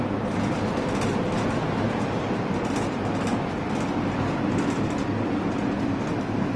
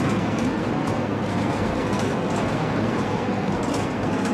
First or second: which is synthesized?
second